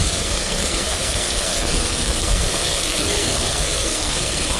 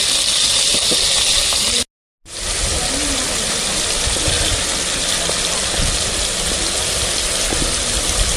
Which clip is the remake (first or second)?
first